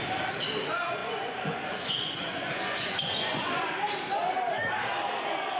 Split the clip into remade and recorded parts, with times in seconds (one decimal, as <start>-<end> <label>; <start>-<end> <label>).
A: 0.0-1.0 recorded; 1.0-3.7 remade; 3.7-5.6 recorded